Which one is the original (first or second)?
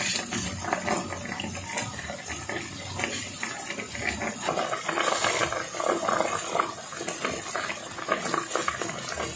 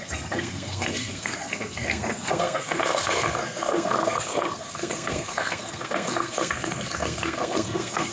first